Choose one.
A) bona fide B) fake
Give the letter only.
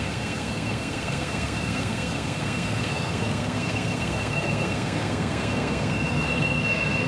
B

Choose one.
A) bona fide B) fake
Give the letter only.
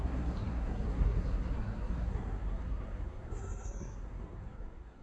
B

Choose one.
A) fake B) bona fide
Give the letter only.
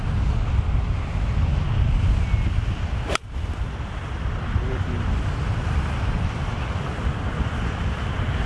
B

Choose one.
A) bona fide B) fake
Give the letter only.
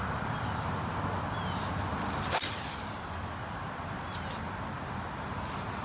A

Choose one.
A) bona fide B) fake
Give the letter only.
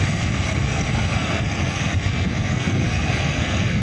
B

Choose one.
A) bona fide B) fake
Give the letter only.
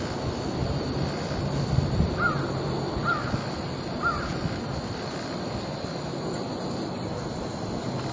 A